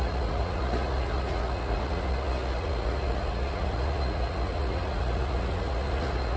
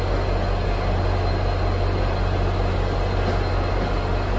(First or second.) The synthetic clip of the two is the first